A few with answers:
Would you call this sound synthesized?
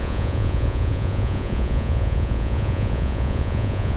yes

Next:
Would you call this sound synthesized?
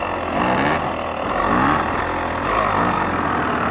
no